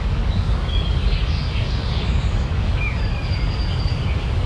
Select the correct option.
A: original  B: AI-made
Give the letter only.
B